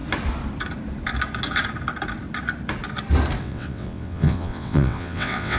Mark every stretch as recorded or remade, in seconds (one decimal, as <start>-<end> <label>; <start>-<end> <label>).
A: 0.0-3.4 recorded; 3.4-5.6 remade